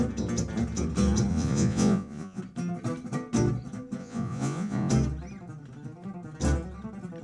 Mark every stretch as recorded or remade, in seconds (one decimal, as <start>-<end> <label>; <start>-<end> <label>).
0.0-1.3 recorded; 1.3-2.4 remade; 2.4-4.0 recorded; 4.0-4.9 remade; 4.9-7.2 recorded